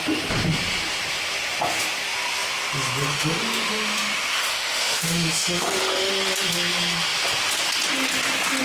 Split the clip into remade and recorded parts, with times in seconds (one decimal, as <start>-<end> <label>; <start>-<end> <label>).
0.0-3.1 recorded; 3.1-6.1 remade; 6.1-8.6 recorded